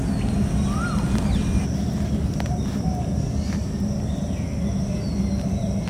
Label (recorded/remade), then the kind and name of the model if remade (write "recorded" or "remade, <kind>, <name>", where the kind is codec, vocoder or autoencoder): recorded